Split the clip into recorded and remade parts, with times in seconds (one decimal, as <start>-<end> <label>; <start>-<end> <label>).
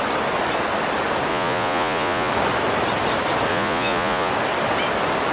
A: 0.0-1.3 recorded; 1.3-2.3 remade; 2.3-3.5 recorded; 3.5-4.3 remade; 4.3-5.3 recorded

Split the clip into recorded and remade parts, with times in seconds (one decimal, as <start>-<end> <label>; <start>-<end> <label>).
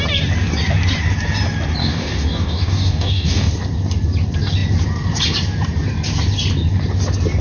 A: 0.0-1.8 recorded; 1.8-3.5 remade; 3.5-7.4 recorded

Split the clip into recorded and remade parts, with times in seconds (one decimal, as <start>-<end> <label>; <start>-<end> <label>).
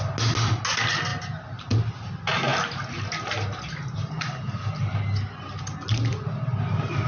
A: 0.0-7.1 recorded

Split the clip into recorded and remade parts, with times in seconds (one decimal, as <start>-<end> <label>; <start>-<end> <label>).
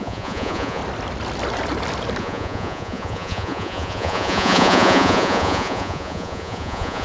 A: 0.0-0.8 remade; 0.8-2.2 recorded; 2.2-7.0 remade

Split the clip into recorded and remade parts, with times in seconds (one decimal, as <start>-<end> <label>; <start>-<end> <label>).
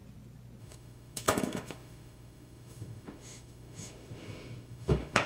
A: 0.0-0.6 recorded; 0.6-5.3 remade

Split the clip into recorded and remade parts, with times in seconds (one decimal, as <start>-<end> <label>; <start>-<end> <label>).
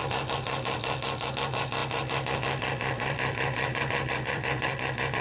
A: 0.0-1.3 remade; 1.3-1.8 recorded; 1.8-5.2 remade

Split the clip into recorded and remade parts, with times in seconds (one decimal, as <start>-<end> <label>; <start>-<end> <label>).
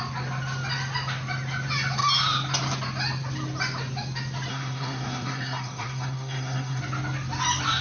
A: 0.0-4.5 recorded; 4.5-6.8 remade; 6.8-7.8 recorded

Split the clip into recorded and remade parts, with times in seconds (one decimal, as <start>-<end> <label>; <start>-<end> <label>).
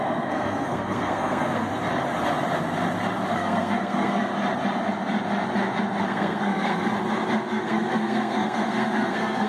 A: 0.0-1.7 remade; 1.7-3.3 recorded; 3.3-4.3 remade; 4.3-6.0 recorded; 6.0-6.9 remade; 6.9-7.5 recorded; 7.5-9.5 remade